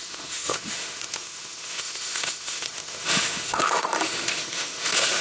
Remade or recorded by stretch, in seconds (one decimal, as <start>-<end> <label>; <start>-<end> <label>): 0.0-5.2 remade